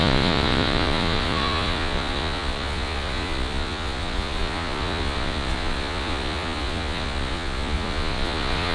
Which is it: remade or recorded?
remade